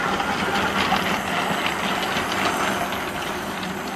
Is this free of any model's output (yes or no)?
yes